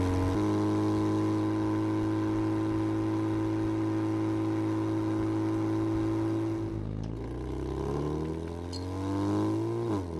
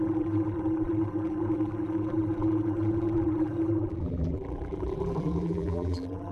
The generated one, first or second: second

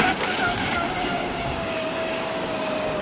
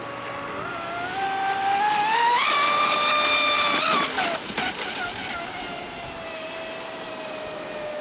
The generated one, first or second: first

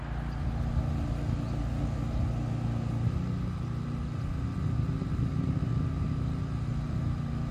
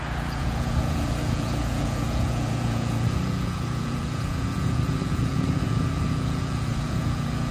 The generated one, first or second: second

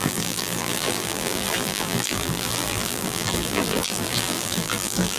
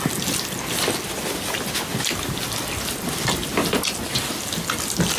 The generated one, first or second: first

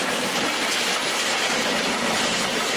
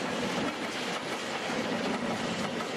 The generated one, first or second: first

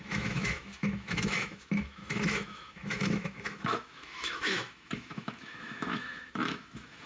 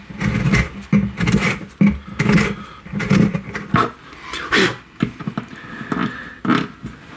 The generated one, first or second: first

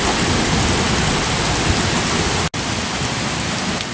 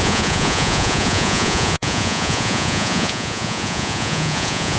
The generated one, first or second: second